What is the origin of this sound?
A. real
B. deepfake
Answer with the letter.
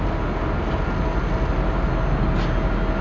A